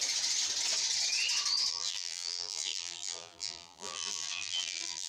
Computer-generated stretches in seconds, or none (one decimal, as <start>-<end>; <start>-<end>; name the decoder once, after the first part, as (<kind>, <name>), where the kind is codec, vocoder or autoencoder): 1.7-5.1 (vocoder, BigVGAN v2)